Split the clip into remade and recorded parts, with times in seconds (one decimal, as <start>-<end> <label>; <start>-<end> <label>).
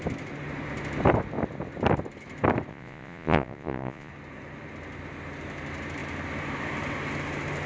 0.0-2.7 recorded; 2.7-4.1 remade; 4.1-7.7 recorded